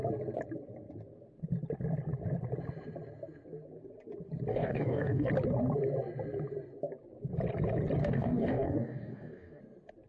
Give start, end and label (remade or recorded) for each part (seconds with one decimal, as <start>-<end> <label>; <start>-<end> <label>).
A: 0.0-4.5 recorded; 4.5-5.3 remade; 5.3-8.0 recorded; 8.0-9.6 remade; 9.6-10.1 recorded